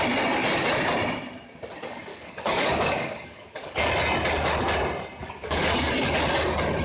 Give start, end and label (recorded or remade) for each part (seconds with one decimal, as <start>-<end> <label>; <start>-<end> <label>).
0.0-2.1 recorded; 2.1-3.9 remade; 3.9-5.2 recorded; 5.2-5.9 remade; 5.9-6.8 recorded